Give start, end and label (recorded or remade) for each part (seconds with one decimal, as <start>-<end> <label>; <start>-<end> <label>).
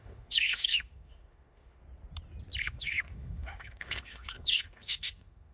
0.0-1.8 remade; 1.8-2.6 recorded; 2.6-5.5 remade